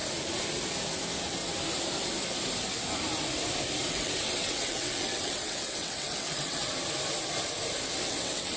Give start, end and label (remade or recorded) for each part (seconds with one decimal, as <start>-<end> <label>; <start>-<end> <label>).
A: 0.0-3.9 recorded; 3.9-6.7 remade; 6.7-8.0 recorded; 8.0-8.6 remade

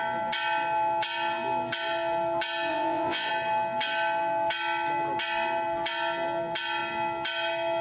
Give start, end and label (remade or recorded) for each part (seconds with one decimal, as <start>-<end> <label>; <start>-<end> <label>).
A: 0.0-2.7 recorded; 2.7-3.3 remade; 3.3-7.8 recorded

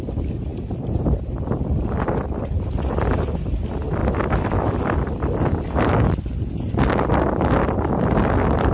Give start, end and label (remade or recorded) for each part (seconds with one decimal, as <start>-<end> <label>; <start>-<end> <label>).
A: 0.0-4.0 recorded; 4.0-6.5 remade; 6.5-8.7 recorded

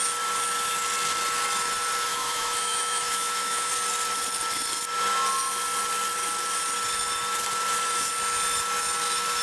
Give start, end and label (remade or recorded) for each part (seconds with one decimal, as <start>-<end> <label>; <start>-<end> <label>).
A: 0.0-2.1 recorded; 2.1-3.7 remade; 3.7-9.4 recorded

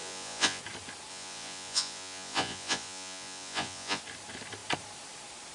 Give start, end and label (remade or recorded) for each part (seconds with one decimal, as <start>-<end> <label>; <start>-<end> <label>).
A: 0.0-0.6 remade; 0.6-1.1 recorded; 1.1-4.0 remade; 4.0-5.5 recorded

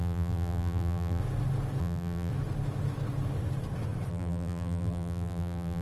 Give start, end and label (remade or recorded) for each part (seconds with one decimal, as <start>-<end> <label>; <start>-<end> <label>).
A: 0.0-1.2 remade; 1.2-1.8 recorded; 1.8-2.3 remade; 2.3-4.1 recorded; 4.1-5.8 remade